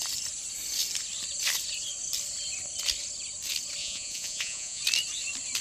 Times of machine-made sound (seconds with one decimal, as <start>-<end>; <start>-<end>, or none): 3.8-4.8